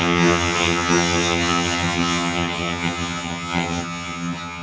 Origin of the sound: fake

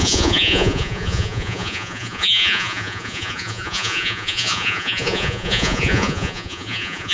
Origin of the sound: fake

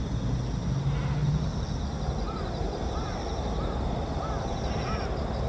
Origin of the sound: real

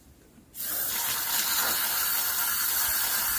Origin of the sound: real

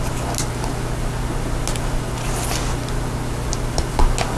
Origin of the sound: real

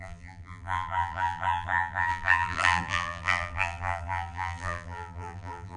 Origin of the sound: fake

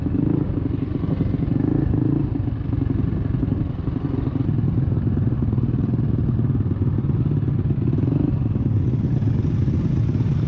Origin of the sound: real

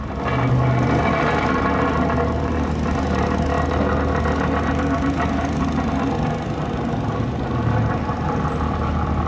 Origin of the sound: real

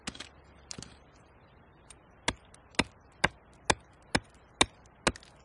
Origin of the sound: real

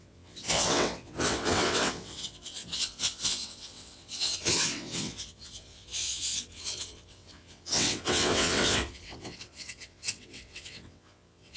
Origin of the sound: fake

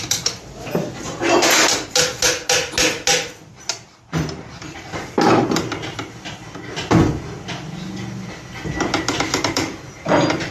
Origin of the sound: real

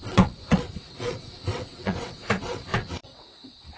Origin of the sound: fake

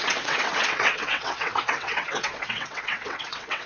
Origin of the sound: fake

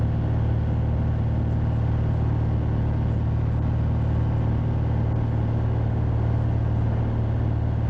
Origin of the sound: real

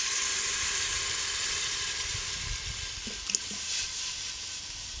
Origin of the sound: real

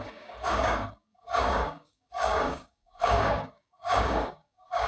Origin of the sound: fake